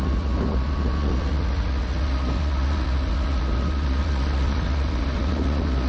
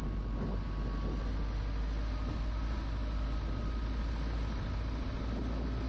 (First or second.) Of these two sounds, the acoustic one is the second